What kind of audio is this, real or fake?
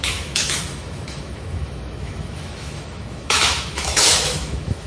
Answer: fake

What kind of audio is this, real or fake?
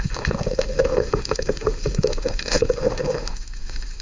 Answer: fake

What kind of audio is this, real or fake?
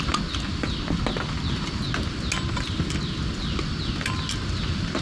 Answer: real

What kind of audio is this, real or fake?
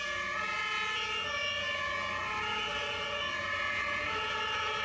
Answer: real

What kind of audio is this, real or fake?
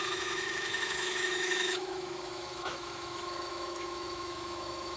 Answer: fake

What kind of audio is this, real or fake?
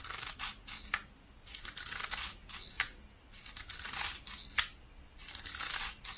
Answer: real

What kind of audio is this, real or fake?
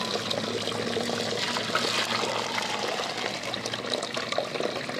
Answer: real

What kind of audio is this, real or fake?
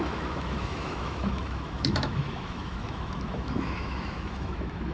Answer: fake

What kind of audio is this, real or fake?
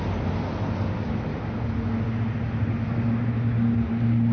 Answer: real